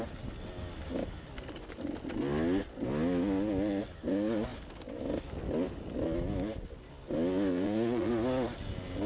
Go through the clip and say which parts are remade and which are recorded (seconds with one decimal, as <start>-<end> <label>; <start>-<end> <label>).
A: 0.0-7.5 recorded; 7.5-8.1 remade; 8.1-9.1 recorded